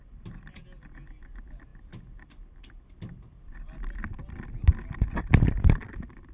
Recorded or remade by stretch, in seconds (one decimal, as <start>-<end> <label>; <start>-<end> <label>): 0.0-6.3 recorded